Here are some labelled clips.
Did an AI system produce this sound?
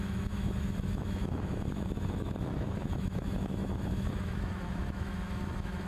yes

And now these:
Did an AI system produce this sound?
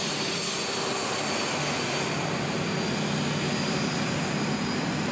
no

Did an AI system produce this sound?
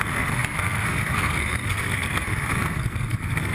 yes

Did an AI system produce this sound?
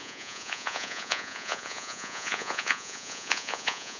yes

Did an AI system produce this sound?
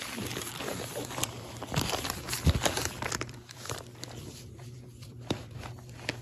yes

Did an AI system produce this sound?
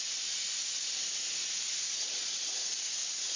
no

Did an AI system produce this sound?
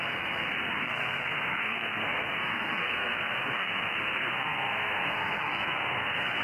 yes